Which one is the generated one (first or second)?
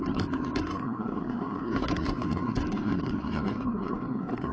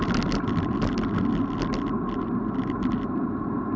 first